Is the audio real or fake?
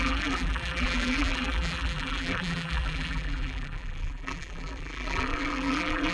fake